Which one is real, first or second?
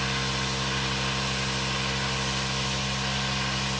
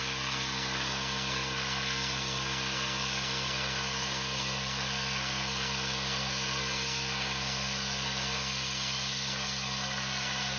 first